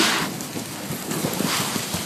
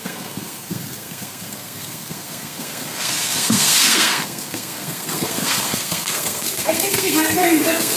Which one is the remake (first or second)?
second